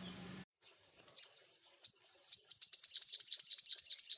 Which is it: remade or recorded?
remade